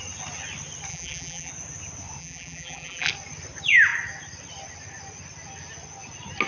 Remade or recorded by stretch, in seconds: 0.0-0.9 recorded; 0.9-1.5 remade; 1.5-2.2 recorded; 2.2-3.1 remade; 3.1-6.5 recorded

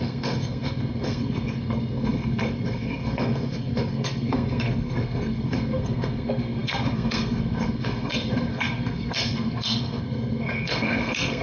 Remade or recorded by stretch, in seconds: 0.0-11.4 remade

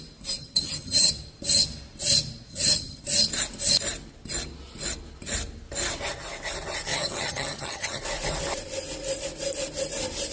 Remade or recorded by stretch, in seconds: 0.0-0.4 recorded; 0.4-1.1 remade; 1.1-2.5 recorded; 2.5-3.0 remade; 3.0-6.9 recorded; 6.9-8.0 remade; 8.0-10.3 recorded

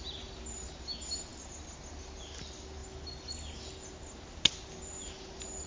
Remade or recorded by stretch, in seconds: 0.0-5.7 recorded

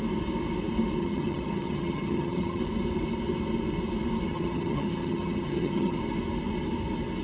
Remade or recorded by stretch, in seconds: 0.0-1.0 recorded; 1.0-2.6 remade; 2.6-4.3 recorded; 4.3-6.0 remade; 6.0-7.2 recorded